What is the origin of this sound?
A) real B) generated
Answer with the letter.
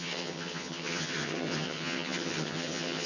B